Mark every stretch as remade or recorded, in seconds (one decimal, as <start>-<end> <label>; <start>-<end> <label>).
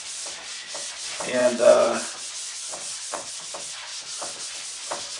0.0-1.4 recorded; 1.4-3.3 remade; 3.3-5.2 recorded